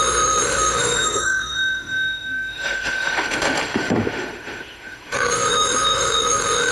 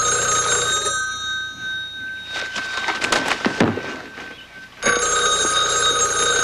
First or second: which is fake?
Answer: first